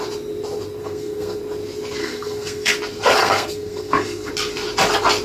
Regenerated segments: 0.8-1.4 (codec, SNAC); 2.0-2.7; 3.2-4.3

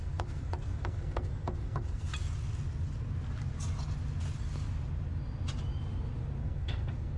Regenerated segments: 0.0-2.1 (codec, SNAC); 6.4-7.2

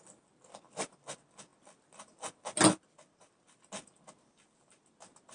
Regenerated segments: none

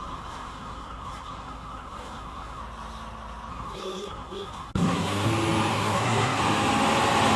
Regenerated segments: 0.0-2.6 (codec, SNAC); 3.5-5.3; 5.7-6.4

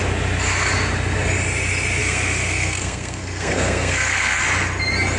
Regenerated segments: 2.0-4.4 (codec, SNAC)

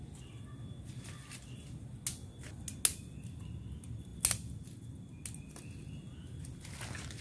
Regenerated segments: none

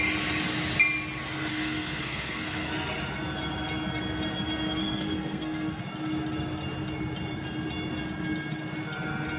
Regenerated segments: 1.5-2.7 (codec, SNAC); 4.8-5.8

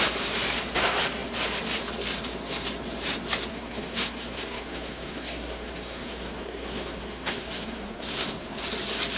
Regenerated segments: 3.5-8.5 (codec, SNAC)